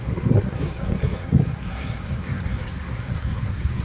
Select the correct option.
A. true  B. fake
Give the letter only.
B